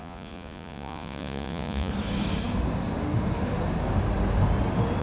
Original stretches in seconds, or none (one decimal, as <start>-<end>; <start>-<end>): 1.9-5.0